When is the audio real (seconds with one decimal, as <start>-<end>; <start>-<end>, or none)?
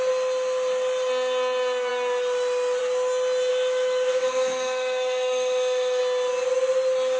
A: 0.0-3.5; 6.0-7.2